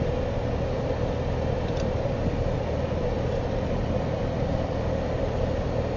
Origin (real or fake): real